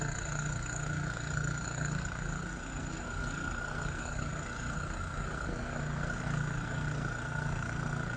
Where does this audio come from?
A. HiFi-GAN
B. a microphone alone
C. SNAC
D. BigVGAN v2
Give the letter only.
C